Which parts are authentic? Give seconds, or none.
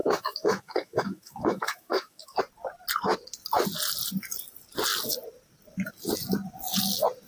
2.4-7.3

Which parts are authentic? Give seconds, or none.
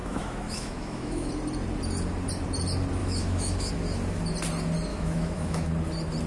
1.3-3.0; 3.7-4.9; 5.7-6.3